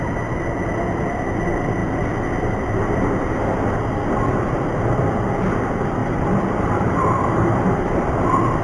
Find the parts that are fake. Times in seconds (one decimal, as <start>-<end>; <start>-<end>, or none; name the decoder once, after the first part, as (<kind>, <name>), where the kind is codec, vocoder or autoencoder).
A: 6.0-8.0 (vocoder, BigVGAN v2)